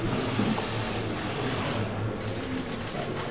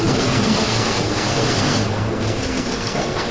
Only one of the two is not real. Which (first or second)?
second